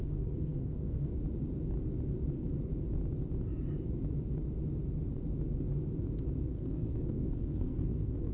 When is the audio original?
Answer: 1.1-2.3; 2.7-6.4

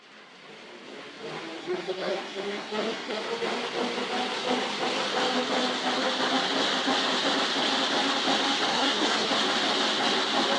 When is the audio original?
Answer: 0.0-1.6; 3.2-8.7; 9.3-10.6

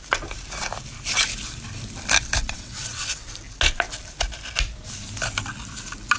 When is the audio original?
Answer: 0.0-2.4; 3.3-6.2

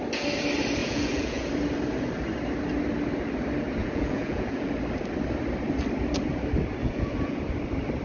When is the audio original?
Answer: 0.0-0.8; 1.5-3.8; 4.7-6.8; 7.4-8.0

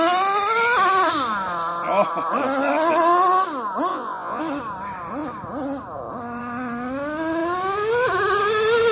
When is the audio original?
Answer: 0.0-3.9; 4.4-8.9